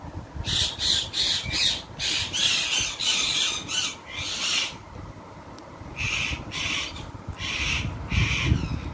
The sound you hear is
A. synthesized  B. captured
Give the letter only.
B